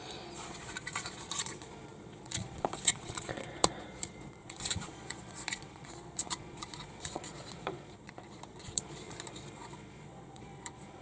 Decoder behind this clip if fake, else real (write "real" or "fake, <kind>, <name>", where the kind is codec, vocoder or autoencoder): fake, vocoder, Vocos